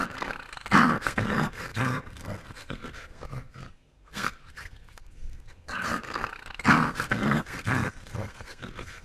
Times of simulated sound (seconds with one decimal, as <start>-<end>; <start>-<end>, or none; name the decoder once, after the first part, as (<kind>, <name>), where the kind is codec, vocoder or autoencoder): 0.0-9.0 (codec, SNAC)